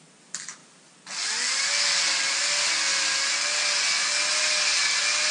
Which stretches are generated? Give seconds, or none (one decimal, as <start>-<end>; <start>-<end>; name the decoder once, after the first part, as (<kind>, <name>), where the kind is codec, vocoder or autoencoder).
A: none